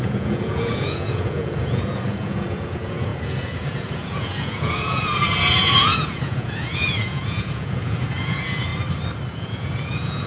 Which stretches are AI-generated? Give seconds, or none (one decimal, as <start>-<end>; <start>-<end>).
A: 0.0-8.7; 9.3-10.3